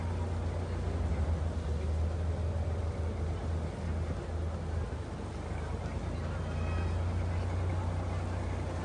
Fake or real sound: real